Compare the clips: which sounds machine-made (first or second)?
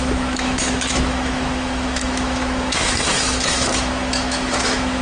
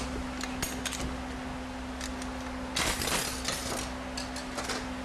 first